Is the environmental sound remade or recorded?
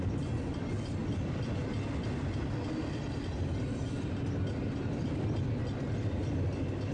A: recorded